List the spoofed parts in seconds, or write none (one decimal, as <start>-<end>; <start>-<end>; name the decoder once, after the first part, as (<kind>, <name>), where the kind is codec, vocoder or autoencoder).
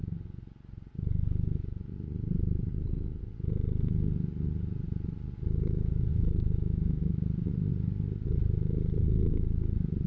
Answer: 6.1-7.7 (autoencoder, DAC-VAE)